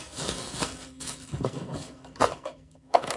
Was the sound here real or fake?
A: fake